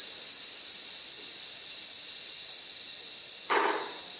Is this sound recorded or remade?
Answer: recorded